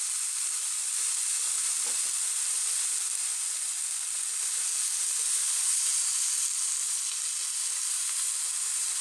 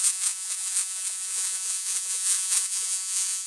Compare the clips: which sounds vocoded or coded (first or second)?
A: second